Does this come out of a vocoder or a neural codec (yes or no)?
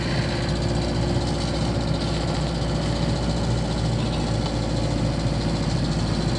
no